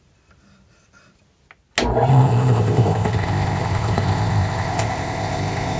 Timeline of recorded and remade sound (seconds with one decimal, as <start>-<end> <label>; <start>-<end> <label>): 0.0-2.1 recorded; 2.1-5.8 remade